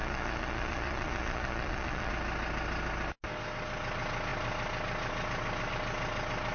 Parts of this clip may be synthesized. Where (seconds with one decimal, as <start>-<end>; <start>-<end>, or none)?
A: 0.0-2.1